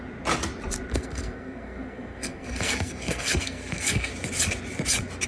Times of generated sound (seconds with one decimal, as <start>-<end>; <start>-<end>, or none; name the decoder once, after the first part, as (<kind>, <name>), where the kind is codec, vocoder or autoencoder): 0.9-4.1 (codec, SNAC)